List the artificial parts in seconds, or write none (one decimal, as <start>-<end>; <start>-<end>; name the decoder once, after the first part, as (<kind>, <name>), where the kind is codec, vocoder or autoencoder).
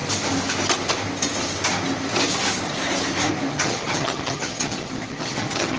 3.5-5.8 (vocoder, HiFi-GAN)